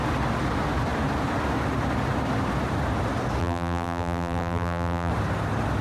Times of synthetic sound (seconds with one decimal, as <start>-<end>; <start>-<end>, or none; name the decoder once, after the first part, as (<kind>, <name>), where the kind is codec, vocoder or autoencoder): 3.4-5.1 (vocoder, BigVGAN v2)